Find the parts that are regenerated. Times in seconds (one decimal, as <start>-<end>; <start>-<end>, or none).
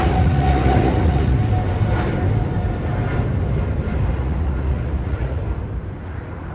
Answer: 0.0-1.4; 4.1-5.4; 6.0-6.5